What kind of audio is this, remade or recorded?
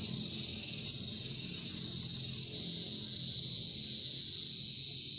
recorded